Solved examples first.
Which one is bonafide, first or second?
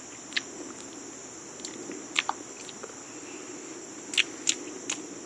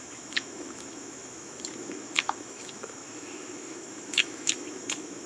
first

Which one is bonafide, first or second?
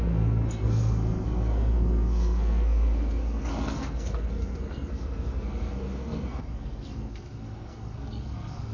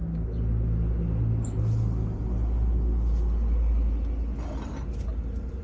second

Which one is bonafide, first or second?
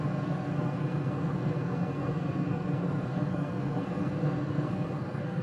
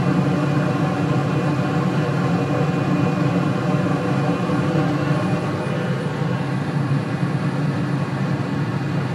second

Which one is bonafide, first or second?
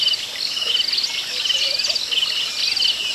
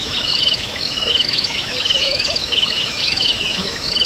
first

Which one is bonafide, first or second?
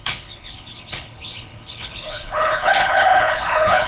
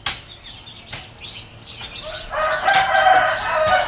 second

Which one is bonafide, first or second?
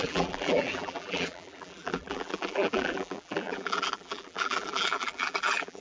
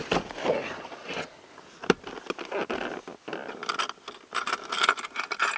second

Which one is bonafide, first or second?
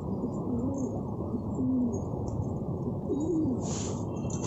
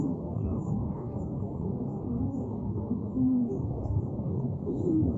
first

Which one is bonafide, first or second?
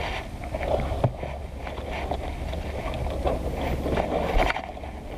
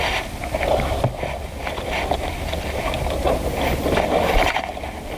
first